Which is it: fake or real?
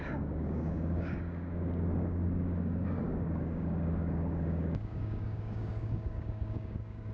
fake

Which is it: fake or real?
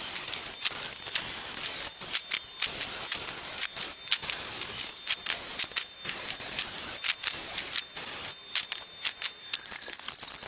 real